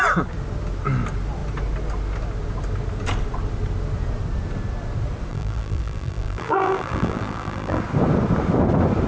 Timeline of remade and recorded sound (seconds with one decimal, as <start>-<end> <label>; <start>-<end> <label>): 0.0-5.3 recorded; 5.3-7.8 remade; 7.8-9.1 recorded